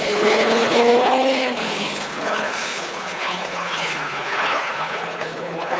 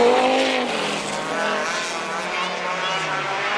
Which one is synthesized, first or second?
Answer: first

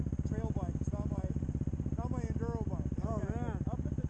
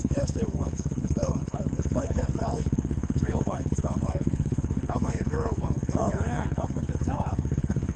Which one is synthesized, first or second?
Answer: second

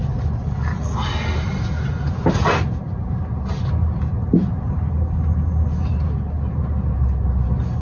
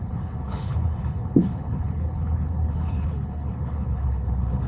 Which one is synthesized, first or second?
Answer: second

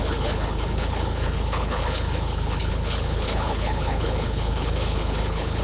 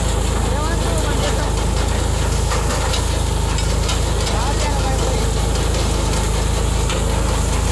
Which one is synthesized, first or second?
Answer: first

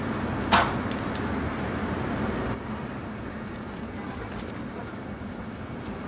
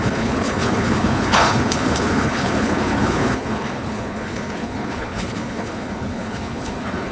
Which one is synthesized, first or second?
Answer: second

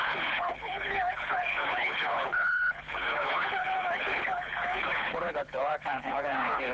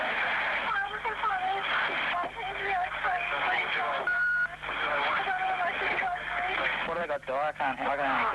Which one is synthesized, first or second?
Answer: first